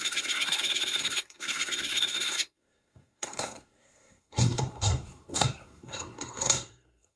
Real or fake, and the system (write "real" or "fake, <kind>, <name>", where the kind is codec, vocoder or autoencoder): fake, codec, SNAC